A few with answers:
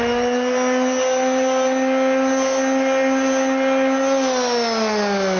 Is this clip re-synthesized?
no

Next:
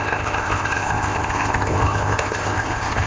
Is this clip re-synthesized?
yes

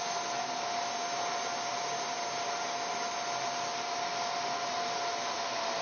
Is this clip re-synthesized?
no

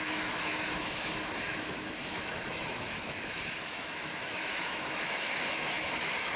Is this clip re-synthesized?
yes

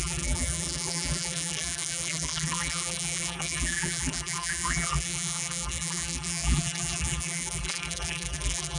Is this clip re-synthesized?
yes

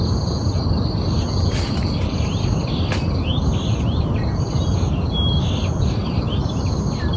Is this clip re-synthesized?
no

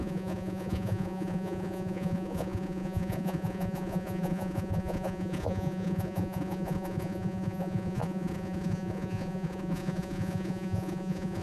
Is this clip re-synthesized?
yes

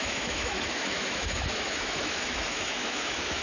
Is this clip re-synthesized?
yes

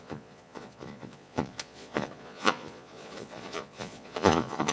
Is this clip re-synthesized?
yes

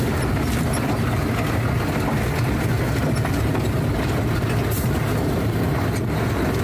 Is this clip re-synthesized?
no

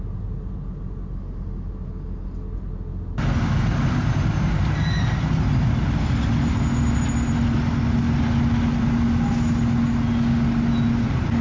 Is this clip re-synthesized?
no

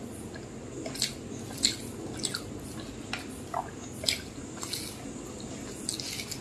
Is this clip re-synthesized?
no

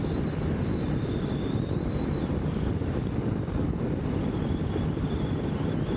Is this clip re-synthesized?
yes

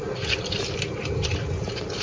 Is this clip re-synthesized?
no